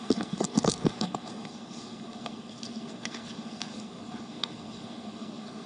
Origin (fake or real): fake